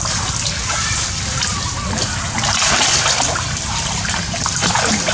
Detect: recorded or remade recorded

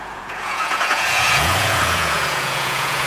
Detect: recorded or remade remade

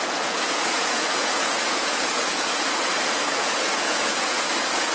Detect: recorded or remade remade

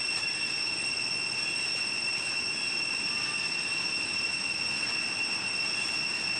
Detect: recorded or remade recorded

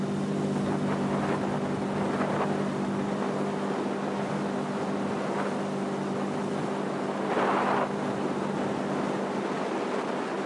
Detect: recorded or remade recorded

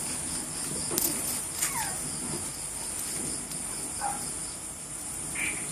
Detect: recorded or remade recorded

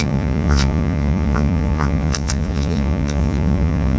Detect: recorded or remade remade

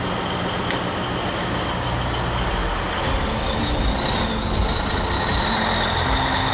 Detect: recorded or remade recorded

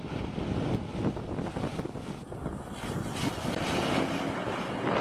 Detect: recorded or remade recorded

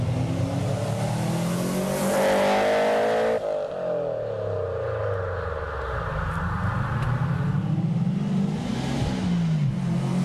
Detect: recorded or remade recorded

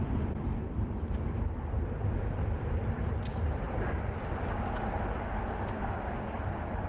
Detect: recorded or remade recorded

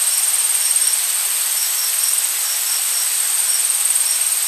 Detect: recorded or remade recorded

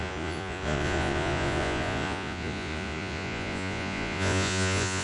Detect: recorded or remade remade